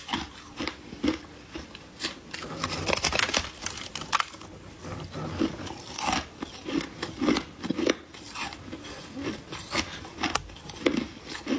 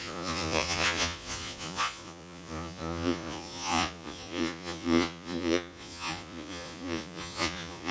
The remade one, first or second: second